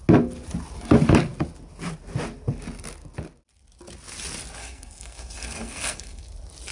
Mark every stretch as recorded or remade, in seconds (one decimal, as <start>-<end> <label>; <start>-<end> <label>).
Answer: 0.0-4.6 recorded; 4.6-6.2 remade; 6.2-6.7 recorded